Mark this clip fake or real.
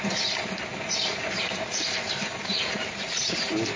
fake